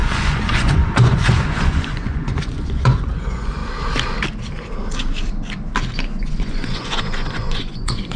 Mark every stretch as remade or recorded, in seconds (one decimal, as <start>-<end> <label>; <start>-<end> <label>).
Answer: 0.0-3.6 remade; 3.6-6.3 recorded; 6.3-8.2 remade